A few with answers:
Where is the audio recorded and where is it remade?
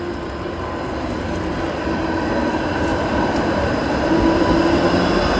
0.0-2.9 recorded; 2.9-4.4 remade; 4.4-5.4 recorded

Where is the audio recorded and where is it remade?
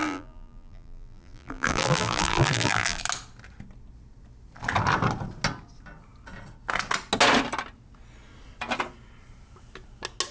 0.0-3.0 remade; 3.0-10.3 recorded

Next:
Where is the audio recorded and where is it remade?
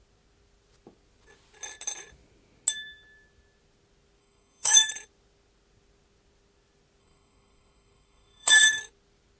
0.0-4.2 recorded; 4.2-4.9 remade; 4.9-7.0 recorded; 7.0-8.8 remade; 8.8-9.4 recorded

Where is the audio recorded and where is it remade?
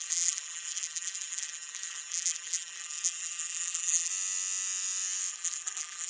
0.0-4.1 remade; 4.1-5.3 recorded; 5.3-6.1 remade